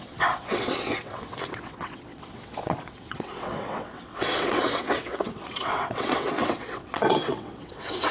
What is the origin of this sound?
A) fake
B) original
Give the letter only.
A